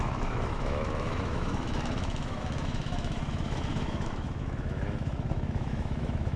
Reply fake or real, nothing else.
fake